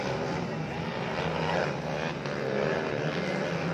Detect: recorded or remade recorded